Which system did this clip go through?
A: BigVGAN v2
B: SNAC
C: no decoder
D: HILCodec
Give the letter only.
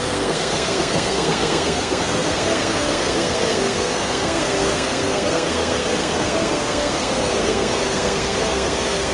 B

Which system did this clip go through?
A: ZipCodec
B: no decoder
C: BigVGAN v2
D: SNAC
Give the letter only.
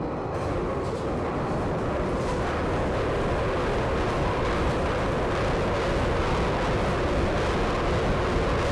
B